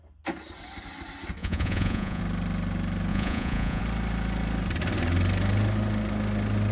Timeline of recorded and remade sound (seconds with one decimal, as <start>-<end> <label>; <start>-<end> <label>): 0.0-1.4 recorded; 1.4-2.2 remade; 2.2-3.1 recorded; 3.1-3.8 remade; 3.8-6.7 recorded